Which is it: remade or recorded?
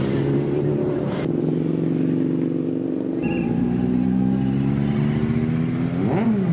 recorded